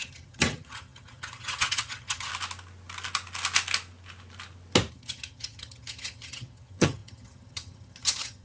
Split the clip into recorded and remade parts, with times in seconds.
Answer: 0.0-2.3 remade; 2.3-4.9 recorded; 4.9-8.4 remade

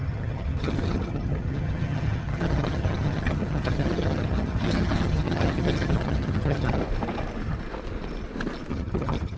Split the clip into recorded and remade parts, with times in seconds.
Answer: 0.0-6.8 remade; 6.8-8.7 recorded; 8.7-9.4 remade

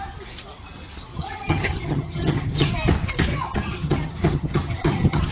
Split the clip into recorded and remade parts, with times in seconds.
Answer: 0.0-1.1 recorded; 1.1-2.7 remade; 2.7-3.3 recorded; 3.3-5.3 remade

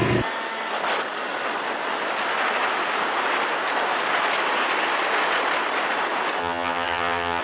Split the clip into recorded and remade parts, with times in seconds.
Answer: 0.0-6.4 recorded; 6.4-7.4 remade

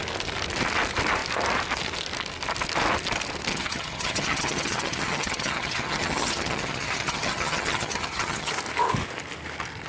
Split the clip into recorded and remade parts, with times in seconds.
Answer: 0.0-3.5 recorded; 3.5-8.5 remade; 8.5-9.9 recorded

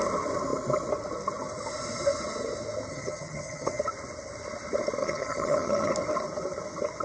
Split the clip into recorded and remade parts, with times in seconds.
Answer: 0.0-2.9 recorded; 2.9-3.8 remade; 3.8-5.0 recorded; 5.0-5.9 remade; 5.9-7.0 recorded

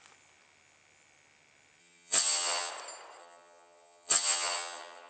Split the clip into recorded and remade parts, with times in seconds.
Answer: 0.0-1.8 recorded; 1.8-2.7 remade; 2.7-3.2 recorded; 3.2-5.1 remade

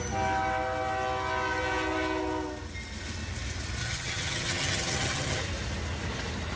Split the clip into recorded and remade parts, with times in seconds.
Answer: 0.0-3.8 recorded; 3.8-5.4 remade; 5.4-6.6 recorded